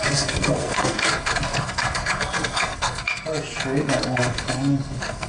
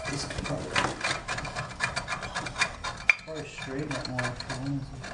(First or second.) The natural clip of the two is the second